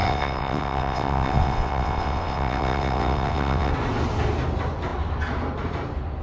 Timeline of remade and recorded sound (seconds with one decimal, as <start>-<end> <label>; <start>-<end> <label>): 0.0-3.7 remade; 3.7-6.2 recorded